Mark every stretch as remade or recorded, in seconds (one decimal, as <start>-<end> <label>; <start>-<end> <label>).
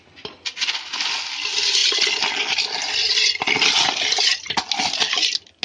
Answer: 0.0-5.6 recorded